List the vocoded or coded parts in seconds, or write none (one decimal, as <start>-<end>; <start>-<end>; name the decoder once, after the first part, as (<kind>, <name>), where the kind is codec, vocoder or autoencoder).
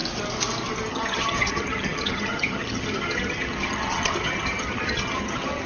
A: 0.9-5.7 (vocoder, HiFi-GAN)